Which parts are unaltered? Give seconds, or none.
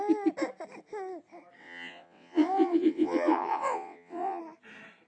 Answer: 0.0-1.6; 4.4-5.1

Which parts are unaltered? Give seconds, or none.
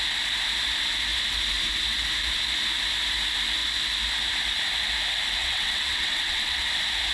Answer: 0.0-5.4; 6.6-7.1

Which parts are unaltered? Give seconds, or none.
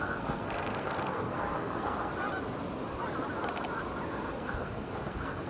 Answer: 2.1-4.1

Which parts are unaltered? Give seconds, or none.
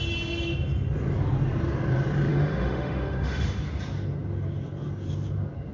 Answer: 0.0-2.3; 3.6-5.7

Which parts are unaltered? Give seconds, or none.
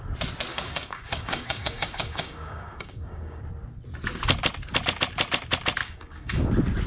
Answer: 0.0-0.5; 3.4-5.8; 6.5-6.9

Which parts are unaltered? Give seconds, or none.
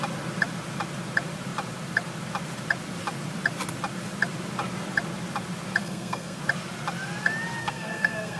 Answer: 0.0-5.8; 6.4-7.6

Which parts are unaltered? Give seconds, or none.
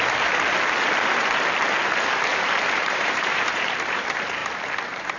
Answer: 0.0-2.3; 4.0-4.4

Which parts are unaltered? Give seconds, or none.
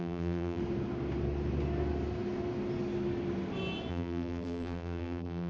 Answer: 0.6-3.9